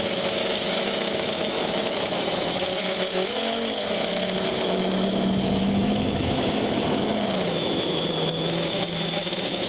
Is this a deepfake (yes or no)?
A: yes